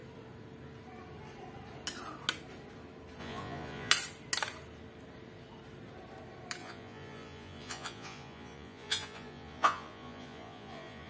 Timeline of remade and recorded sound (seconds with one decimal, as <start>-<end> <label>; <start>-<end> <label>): 0.0-3.2 recorded; 3.2-3.9 remade; 3.9-6.6 recorded; 6.6-11.1 remade